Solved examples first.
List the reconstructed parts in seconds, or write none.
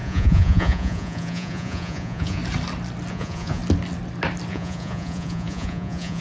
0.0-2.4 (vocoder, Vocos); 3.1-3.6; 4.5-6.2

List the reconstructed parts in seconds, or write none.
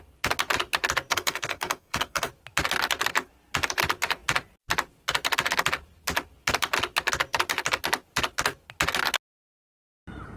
1.1-2.3 (codec, SNAC)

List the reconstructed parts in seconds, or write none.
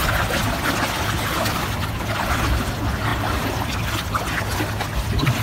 none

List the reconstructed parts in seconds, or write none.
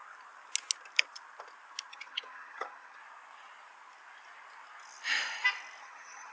1.9-3.0 (vocoder, HiFi-GAN); 5.8-6.3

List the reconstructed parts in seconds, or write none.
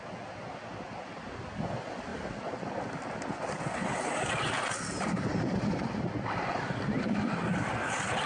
none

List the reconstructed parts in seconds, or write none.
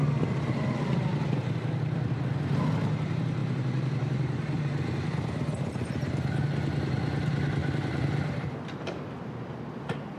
3.4-4.6 (vocoder, BigVGAN v2); 7.6-8.5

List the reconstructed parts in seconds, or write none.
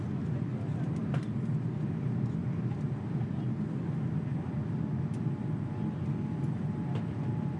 1.0-1.7 (vocoder, BigVGAN v2)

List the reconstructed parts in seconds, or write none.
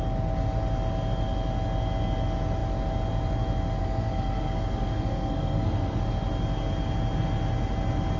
3.8-6.0 (codec, SNAC)